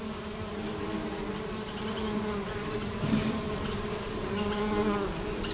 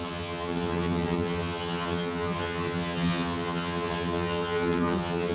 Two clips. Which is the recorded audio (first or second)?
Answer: first